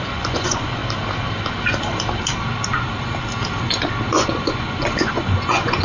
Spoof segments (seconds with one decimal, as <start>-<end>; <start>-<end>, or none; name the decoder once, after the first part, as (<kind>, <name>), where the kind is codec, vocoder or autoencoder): 0.0-0.8 (vocoder, Vocos); 4.1-5.8